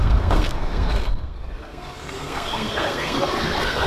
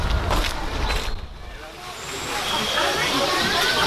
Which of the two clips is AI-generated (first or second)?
first